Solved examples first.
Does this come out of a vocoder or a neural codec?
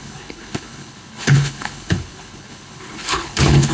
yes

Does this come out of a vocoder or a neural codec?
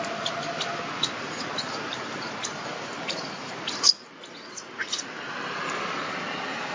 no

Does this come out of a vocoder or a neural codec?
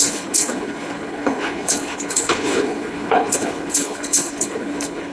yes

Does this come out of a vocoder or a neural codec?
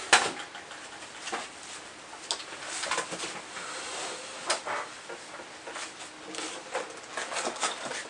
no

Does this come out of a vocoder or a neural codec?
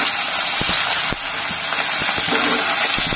no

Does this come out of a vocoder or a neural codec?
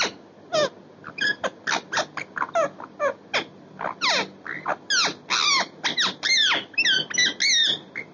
no